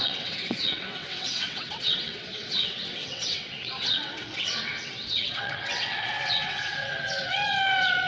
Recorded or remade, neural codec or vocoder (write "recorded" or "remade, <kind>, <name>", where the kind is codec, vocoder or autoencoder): remade, vocoder, WaveNeXt